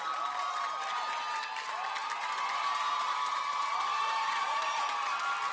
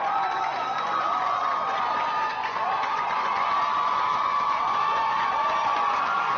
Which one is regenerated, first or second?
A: second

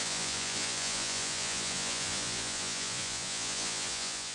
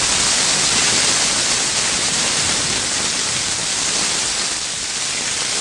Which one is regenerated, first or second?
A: first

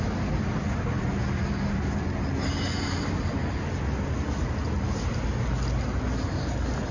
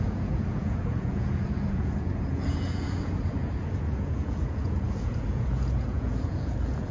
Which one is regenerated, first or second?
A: second